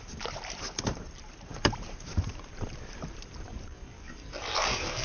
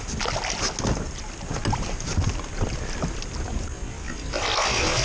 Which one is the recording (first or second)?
second